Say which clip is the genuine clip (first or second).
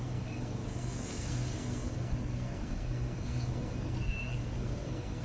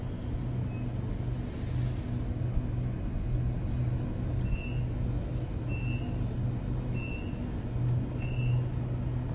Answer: second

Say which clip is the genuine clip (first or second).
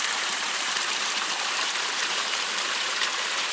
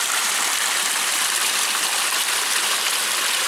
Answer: second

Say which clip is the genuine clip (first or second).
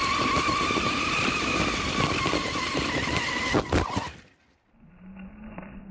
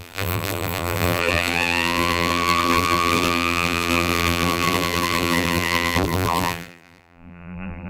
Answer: first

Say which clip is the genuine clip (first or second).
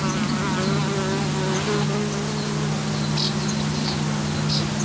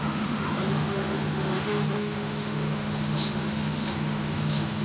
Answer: first